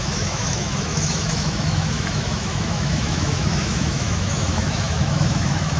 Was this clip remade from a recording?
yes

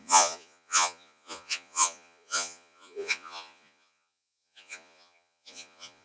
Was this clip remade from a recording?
yes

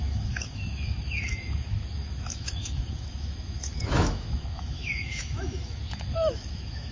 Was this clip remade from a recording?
yes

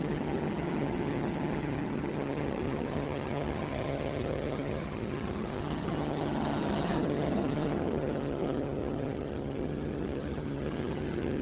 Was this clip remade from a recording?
yes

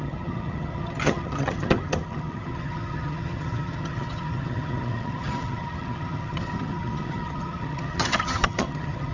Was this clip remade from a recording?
yes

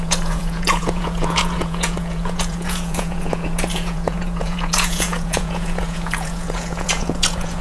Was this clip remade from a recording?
yes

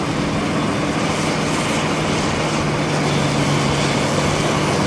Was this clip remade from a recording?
no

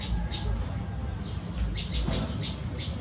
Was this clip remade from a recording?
no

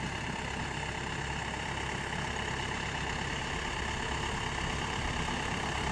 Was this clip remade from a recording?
no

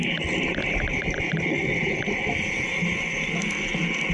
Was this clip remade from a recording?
no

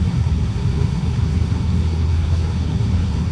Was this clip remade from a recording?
yes